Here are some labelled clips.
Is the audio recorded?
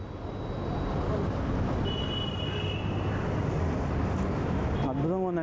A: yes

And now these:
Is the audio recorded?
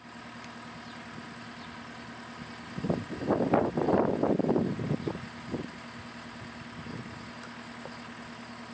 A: yes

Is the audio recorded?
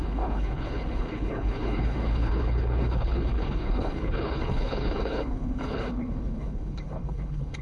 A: no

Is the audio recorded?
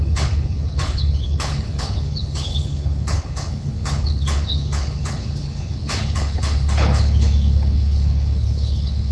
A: no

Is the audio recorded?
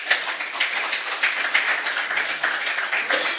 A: yes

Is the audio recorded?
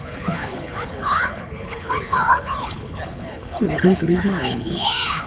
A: no